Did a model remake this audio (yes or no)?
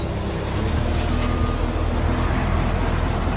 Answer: no